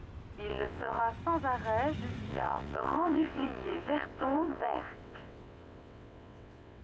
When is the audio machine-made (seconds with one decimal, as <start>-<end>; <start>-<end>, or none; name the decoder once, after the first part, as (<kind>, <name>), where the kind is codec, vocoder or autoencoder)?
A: 0.5-1.0 (vocoder, WaveNeXt); 2.3-6.8